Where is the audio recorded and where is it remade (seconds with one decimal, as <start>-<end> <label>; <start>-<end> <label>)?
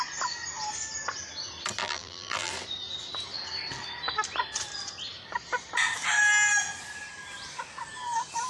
0.0-1.8 recorded; 1.8-2.5 remade; 2.5-8.5 recorded